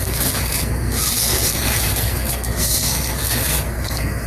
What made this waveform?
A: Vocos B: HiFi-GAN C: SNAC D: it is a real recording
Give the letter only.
C